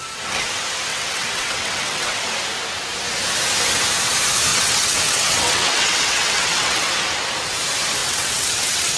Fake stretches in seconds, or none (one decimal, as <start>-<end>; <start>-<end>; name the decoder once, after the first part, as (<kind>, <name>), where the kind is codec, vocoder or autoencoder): 0.9-2.2 (vocoder, WaveNeXt); 4.5-6.9; 8.0-9.0